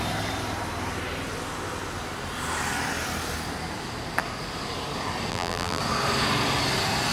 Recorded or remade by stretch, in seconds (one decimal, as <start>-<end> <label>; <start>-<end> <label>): 0.0-5.3 recorded; 5.3-5.8 remade; 5.8-7.1 recorded

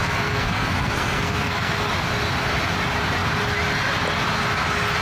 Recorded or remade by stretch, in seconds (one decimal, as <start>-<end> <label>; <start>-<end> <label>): 0.0-1.9 remade; 1.9-5.0 recorded

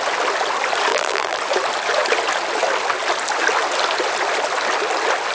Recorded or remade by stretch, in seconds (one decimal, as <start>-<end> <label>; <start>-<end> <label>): 0.0-0.9 recorded; 0.9-1.4 remade; 1.4-5.3 recorded

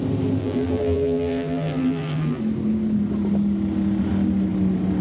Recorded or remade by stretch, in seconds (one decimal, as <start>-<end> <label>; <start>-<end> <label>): 0.0-0.4 recorded; 0.4-2.4 remade; 2.4-5.0 recorded

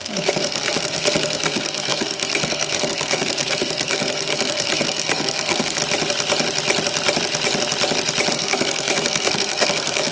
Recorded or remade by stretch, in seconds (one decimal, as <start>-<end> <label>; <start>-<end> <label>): 0.0-5.8 remade; 5.8-8.3 recorded; 8.3-10.1 remade

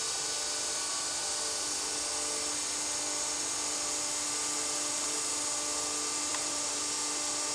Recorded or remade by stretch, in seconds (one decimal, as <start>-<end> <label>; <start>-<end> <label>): 0.0-6.3 recorded; 6.3-6.8 remade; 6.8-7.5 recorded